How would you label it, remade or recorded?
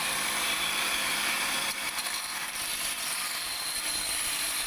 remade